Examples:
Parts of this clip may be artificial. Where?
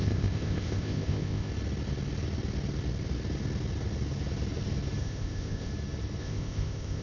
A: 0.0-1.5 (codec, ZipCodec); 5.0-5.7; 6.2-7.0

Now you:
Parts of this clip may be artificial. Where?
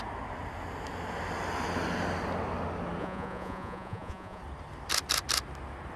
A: 3.0-4.4 (vocoder, Vocos)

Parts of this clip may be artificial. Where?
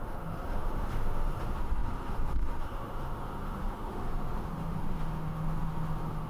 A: 0.0-6.3 (autoencoder, DAC-VAE)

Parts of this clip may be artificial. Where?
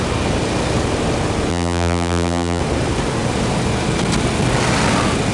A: 1.5-2.6 (vocoder, BigVGAN v2)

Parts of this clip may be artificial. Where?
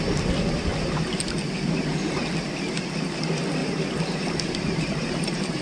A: 3.6-5.6 (vocoder, BigVGAN v2)